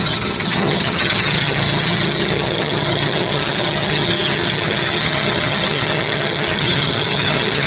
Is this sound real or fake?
fake